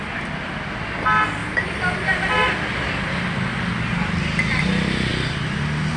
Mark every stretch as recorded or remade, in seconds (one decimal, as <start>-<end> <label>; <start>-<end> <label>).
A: 0.0-6.0 recorded